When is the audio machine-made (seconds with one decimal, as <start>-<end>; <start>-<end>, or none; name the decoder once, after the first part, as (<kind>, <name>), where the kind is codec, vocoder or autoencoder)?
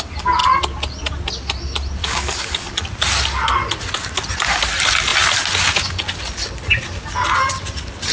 2.0-2.7 (codec, DAC)